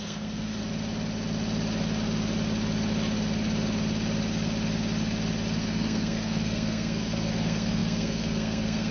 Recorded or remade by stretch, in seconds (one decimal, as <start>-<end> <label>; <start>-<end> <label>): 0.0-0.6 remade; 0.6-5.6 recorded; 5.6-8.9 remade